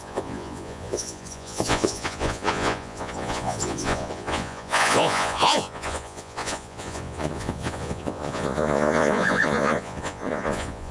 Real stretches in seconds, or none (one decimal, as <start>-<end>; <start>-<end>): none